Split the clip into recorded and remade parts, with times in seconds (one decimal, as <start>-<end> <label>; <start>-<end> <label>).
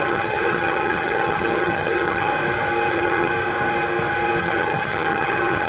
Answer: 0.0-2.3 remade; 2.3-2.9 recorded; 2.9-3.3 remade; 3.3-4.4 recorded; 4.4-5.7 remade